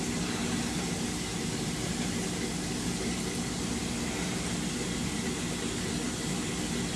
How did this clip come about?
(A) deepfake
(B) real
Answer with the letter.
B